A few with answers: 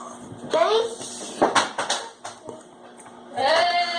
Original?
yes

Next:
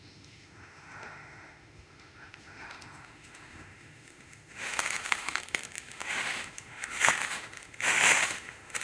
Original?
no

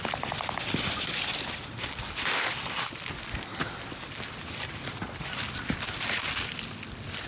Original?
yes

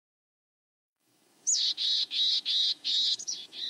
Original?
no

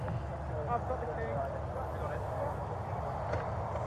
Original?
yes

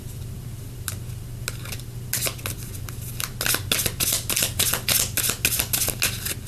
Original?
yes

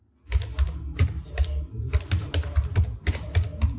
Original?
yes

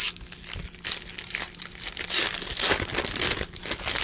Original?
yes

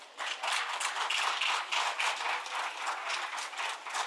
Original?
yes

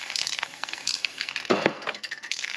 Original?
no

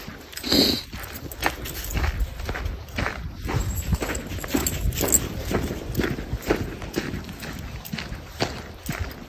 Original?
yes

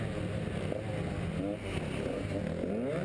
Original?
yes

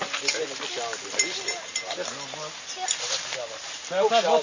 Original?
yes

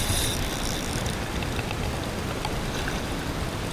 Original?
no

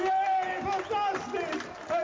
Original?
yes